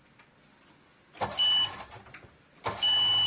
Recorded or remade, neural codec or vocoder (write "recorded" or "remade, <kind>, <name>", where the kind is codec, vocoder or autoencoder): recorded